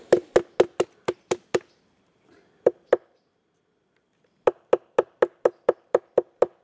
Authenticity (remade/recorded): recorded